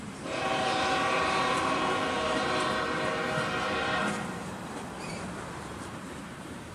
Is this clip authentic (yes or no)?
no